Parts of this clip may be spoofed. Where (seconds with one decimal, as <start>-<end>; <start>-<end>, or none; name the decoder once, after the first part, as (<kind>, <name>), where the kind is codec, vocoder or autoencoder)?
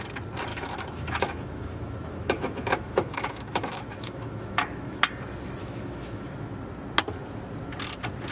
0.5-5.0 (autoencoder, DAC-VAE); 5.6-6.3